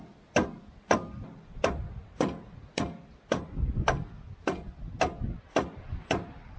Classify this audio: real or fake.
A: real